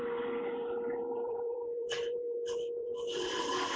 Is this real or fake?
fake